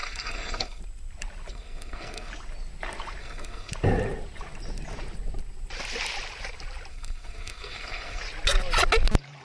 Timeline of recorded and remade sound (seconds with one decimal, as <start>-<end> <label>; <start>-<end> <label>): 0.0-0.8 remade; 0.8-1.5 recorded; 1.5-2.3 remade; 2.3-3.2 recorded; 3.2-3.7 remade; 3.7-6.9 recorded; 6.9-8.2 remade; 8.2-9.4 recorded